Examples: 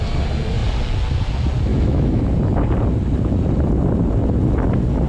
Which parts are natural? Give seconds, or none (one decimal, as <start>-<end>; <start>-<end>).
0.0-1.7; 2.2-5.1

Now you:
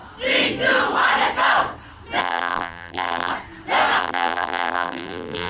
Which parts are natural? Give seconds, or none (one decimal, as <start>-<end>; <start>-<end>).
0.0-2.2; 3.3-4.0

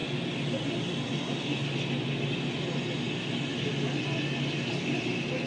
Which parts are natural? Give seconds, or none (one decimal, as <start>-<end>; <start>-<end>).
0.0-5.5

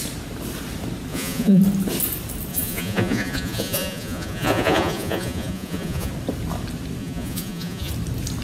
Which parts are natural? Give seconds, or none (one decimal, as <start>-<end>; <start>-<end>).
0.0-1.1; 1.6-2.5; 6.1-7.0; 7.9-8.4

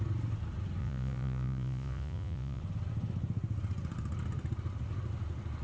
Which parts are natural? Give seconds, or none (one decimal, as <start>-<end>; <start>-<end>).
0.0-0.8; 2.6-5.6